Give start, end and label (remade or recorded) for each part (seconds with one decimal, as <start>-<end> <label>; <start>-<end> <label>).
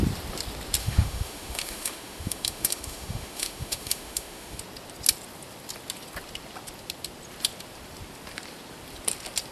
0.0-0.8 recorded; 0.8-4.6 remade; 4.6-9.5 recorded